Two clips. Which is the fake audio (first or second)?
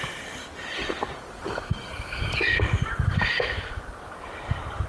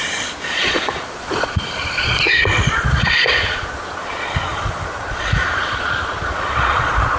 second